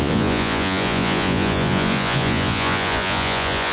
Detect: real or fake fake